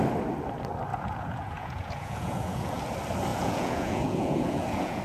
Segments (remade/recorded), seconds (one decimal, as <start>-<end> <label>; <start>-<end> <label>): 0.0-0.9 recorded; 0.9-2.8 remade; 2.8-3.3 recorded; 3.3-5.0 remade